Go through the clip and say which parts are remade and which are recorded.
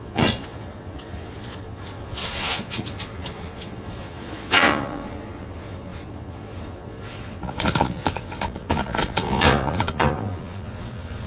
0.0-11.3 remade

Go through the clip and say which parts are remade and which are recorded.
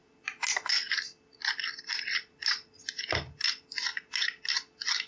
0.0-5.1 recorded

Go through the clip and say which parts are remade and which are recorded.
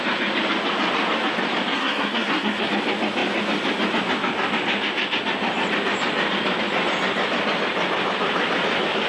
0.0-1.7 recorded; 1.7-2.7 remade; 2.7-9.1 recorded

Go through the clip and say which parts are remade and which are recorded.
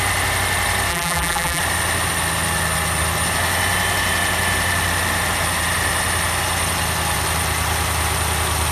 0.0-0.9 recorded; 0.9-1.6 remade; 1.6-8.7 recorded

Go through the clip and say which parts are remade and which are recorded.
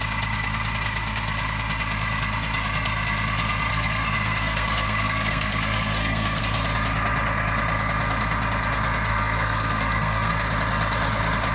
0.0-3.7 recorded; 3.7-6.4 remade; 6.4-9.1 recorded; 9.1-10.3 remade; 10.3-11.5 recorded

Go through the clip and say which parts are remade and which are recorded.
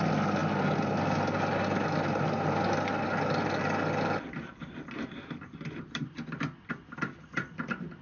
0.0-8.0 recorded